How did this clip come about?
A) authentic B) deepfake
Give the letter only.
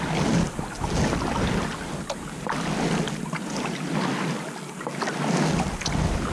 A